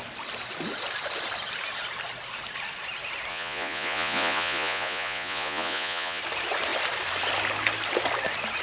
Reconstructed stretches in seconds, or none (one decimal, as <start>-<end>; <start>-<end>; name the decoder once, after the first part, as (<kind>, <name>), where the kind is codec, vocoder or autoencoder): 3.3-6.2 (vocoder, Vocos)